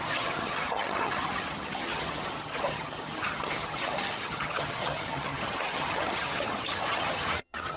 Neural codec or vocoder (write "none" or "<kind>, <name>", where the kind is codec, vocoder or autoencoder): vocoder, HiFi-GAN